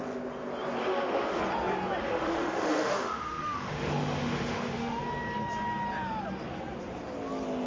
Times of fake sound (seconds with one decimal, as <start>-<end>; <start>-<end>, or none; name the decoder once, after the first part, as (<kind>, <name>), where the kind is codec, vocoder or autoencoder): 0.8-1.4 (autoencoder, DAC-VAE); 2.0-5.0